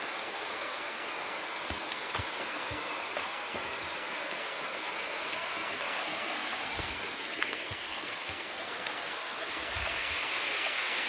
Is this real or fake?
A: fake